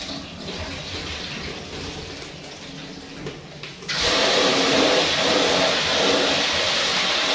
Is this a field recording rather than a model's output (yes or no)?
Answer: yes